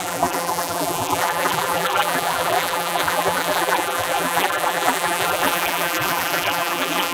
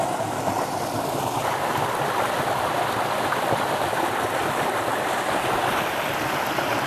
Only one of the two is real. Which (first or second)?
second